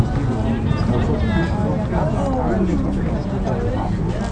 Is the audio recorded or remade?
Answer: recorded